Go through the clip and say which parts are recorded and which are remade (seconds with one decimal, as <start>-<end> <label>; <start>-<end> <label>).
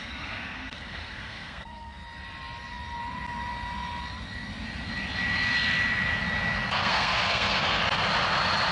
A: 0.0-2.0 remade; 2.0-6.7 recorded; 6.7-7.8 remade; 7.8-8.7 recorded